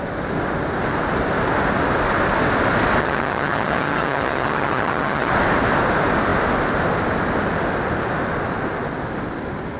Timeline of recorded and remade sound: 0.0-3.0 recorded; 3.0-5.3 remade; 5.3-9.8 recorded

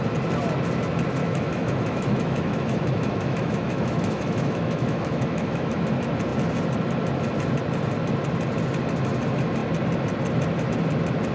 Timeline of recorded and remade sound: 0.0-1.2 recorded; 1.2-5.8 remade; 5.8-11.3 recorded

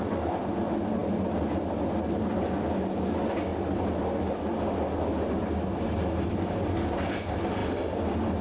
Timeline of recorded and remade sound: 0.0-8.4 recorded

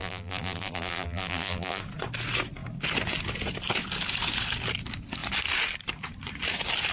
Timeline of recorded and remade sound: 0.0-1.8 remade; 1.8-6.9 recorded

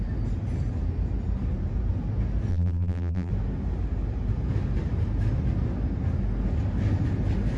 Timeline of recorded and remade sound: 0.0-2.5 recorded; 2.5-3.3 remade; 3.3-7.6 recorded

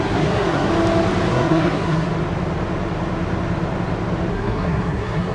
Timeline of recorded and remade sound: 0.0-0.7 remade; 0.7-1.3 recorded; 1.3-2.1 remade; 2.1-4.3 recorded; 4.3-5.3 remade

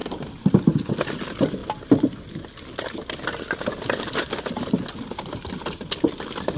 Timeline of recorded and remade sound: 0.0-0.9 remade; 0.9-6.6 recorded

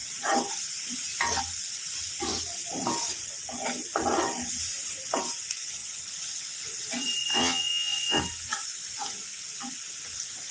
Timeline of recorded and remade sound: 0.0-7.3 recorded; 7.3-8.2 remade; 8.2-10.5 recorded